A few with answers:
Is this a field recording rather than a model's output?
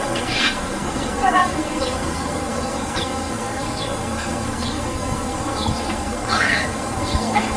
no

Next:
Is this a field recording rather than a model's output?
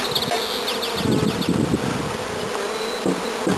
yes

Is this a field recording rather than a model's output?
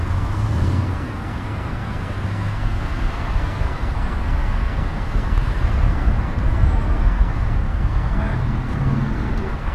no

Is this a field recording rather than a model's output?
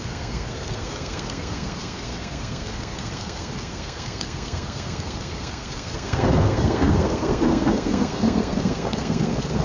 no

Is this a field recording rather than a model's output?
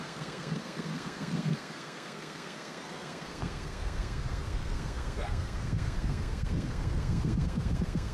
no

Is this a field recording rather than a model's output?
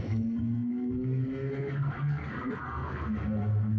no